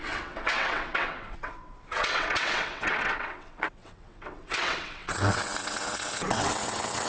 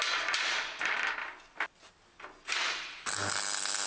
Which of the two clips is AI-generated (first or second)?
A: first